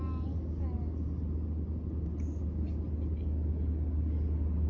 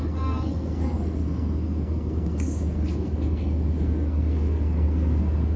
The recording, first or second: first